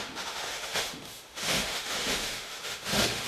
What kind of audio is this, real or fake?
fake